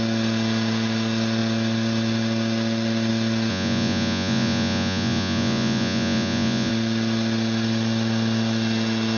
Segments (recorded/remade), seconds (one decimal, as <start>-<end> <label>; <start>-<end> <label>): 0.0-3.5 recorded; 3.5-6.7 remade; 6.7-9.2 recorded